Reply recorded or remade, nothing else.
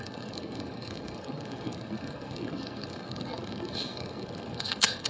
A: remade